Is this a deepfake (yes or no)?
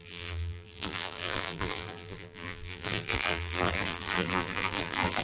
yes